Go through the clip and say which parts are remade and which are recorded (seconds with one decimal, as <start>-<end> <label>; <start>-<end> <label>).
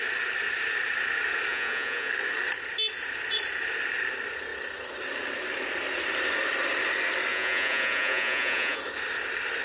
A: 0.0-1.5 recorded; 1.5-2.1 remade; 2.1-7.3 recorded; 7.3-8.8 remade; 8.8-9.6 recorded